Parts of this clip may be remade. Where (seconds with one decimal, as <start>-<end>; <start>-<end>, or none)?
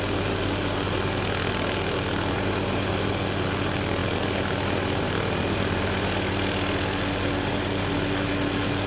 none